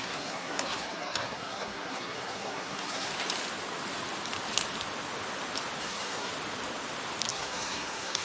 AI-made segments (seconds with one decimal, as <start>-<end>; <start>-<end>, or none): 0.0-3.1; 5.8-6.3; 7.3-8.2